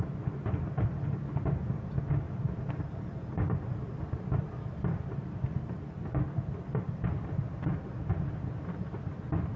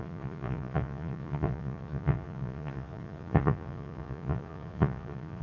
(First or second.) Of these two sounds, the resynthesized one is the second